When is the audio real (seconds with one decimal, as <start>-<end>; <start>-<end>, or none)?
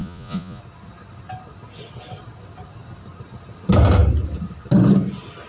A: 0.6-5.5